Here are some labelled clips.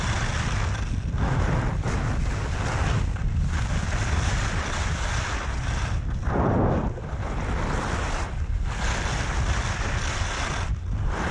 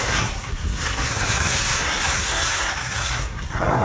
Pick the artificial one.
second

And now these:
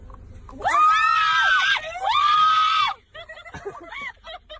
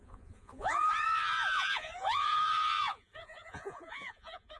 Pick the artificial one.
second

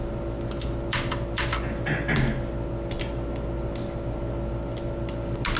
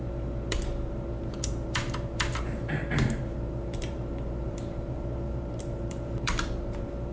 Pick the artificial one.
second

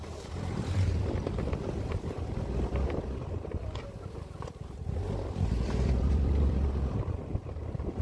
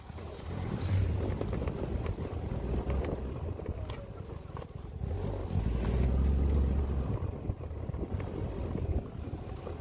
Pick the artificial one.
first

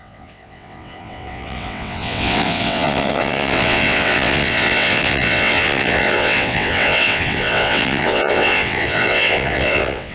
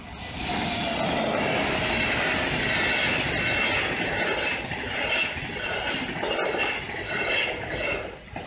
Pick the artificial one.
first